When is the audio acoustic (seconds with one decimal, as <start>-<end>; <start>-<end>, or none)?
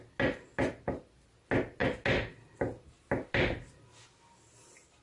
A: 0.0-5.0